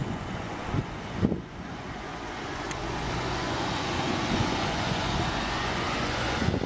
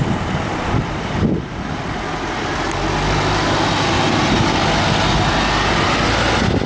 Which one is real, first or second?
second